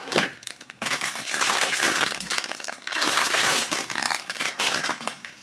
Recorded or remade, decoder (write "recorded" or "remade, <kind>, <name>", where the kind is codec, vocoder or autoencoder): remade, codec, SNAC